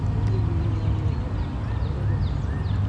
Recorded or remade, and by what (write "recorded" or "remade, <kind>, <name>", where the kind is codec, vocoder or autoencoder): recorded